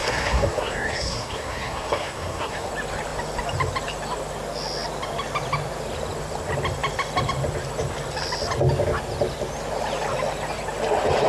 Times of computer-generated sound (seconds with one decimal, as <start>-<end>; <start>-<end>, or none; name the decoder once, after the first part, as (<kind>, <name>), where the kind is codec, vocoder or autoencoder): 0.0-2.7 (codec, SNAC)

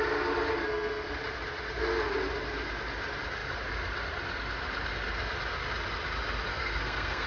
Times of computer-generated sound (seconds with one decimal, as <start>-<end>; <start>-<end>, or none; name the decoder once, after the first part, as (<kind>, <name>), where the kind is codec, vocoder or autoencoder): 0.6-1.1 (codec, SNAC); 6.5-7.3

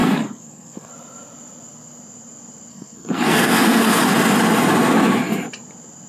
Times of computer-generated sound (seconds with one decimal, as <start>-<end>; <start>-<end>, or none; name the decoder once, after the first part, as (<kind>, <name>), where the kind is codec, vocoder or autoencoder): 0.0-0.9 (codec, SNAC); 2.7-4.0

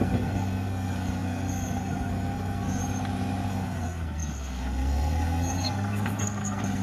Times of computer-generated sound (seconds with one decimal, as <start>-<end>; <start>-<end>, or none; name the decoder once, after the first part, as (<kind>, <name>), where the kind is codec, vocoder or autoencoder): 0.0-2.8 (codec, SNAC); 3.5-6.8